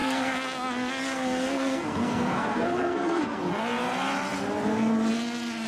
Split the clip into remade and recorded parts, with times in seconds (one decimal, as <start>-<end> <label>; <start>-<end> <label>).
0.0-3.4 remade; 3.4-5.7 recorded